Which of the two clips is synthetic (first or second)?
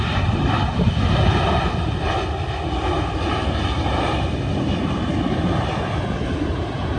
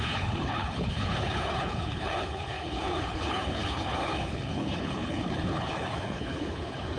second